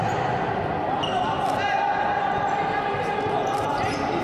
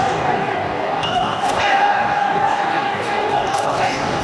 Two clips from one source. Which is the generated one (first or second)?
second